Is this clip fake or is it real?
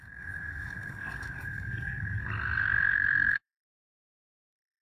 fake